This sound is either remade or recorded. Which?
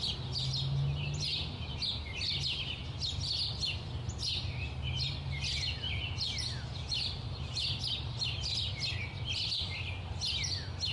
recorded